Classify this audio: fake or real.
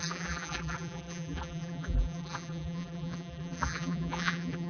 fake